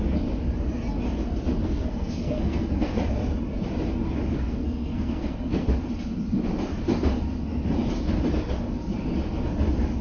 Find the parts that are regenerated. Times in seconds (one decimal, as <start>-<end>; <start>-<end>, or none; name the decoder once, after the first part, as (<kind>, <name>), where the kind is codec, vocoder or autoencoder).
1.6-3.0 (codec, SNAC); 4.3-5.7